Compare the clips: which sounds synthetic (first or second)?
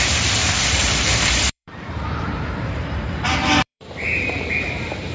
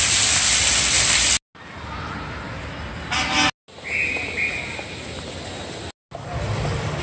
first